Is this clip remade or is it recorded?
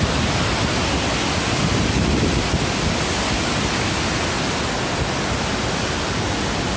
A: recorded